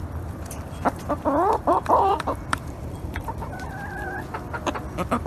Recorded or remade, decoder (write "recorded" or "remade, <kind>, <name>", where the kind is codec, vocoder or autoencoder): remade, vocoder, BigVGAN v2